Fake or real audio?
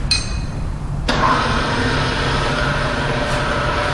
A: fake